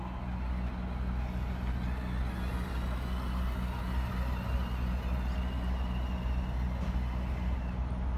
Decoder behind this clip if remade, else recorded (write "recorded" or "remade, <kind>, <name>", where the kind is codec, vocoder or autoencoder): recorded